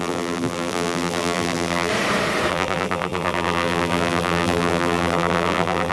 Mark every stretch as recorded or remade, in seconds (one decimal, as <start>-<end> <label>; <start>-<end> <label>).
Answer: 0.0-1.9 remade; 1.9-2.5 recorded; 2.5-5.9 remade